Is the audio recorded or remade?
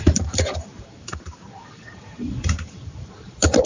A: remade